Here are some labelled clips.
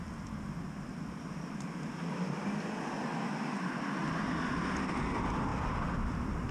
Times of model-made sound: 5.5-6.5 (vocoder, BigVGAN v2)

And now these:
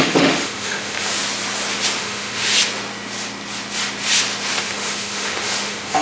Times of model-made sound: 0.0-1.2 (autoencoder, DAC-VAE); 2.0-2.5; 4.6-6.0

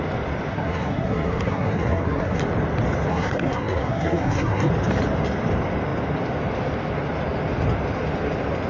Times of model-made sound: 0.5-2.4 (codec, SNAC); 3.1-4.7

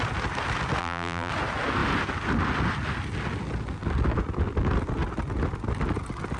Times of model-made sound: 0.8-1.3 (vocoder, BigVGAN v2)

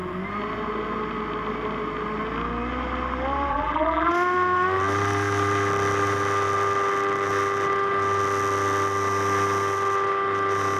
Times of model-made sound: 3.5-4.1 (vocoder, BigVGAN v2)

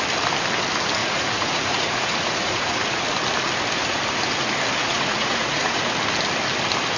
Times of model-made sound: 1.0-3.0 (vocoder, Vocos); 4.8-5.9

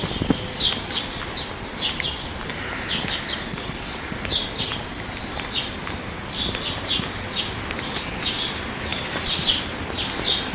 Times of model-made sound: 8.9-9.6 (vocoder, BigVGAN v2)

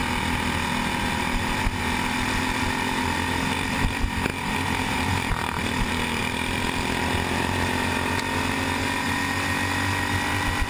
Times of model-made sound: 4.3-6.2 (vocoder, BigVGAN v2)